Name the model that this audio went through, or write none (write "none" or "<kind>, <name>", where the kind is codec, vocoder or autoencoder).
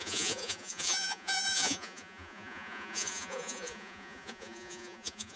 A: vocoder, Vocos